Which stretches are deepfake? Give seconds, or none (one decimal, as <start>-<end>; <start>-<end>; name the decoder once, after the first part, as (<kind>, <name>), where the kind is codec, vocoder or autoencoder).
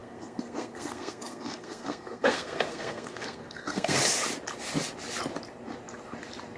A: 0.0-4.0 (codec, SNAC)